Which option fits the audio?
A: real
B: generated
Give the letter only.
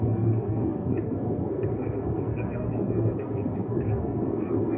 B